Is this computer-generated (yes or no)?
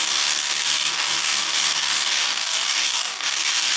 yes